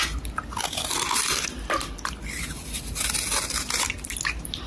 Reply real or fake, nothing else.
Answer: real